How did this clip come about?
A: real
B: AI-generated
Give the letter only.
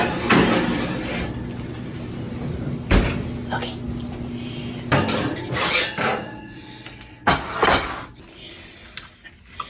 A